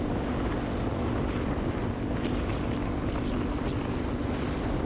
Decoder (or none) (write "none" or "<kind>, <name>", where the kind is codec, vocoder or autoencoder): none